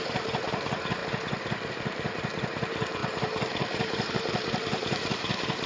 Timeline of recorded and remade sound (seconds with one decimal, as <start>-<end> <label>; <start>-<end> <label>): 0.0-1.0 remade; 1.0-1.7 recorded; 1.7-5.7 remade

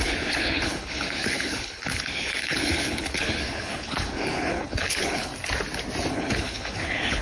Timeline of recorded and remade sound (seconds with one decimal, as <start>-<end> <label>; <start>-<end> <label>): 0.0-5.3 remade; 5.3-6.1 recorded; 6.1-7.2 remade

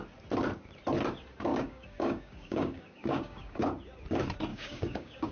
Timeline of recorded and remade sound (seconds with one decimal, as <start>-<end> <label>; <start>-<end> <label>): 0.0-1.5 recorded; 1.5-3.6 remade; 3.6-4.5 recorded; 4.5-5.3 remade

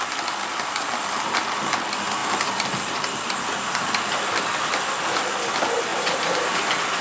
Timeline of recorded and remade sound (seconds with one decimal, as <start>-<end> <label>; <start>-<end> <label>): 0.0-2.2 recorded; 2.2-3.4 remade; 3.4-5.9 recorded; 5.9-6.6 remade; 6.6-7.0 recorded